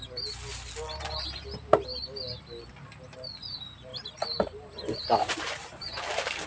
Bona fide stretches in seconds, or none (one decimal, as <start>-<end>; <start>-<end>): 0.0-1.9; 2.4-3.9